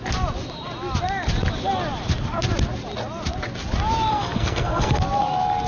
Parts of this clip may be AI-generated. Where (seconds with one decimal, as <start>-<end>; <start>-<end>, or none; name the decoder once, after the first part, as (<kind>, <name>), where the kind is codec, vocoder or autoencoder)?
4.1-5.0 (codec, SNAC)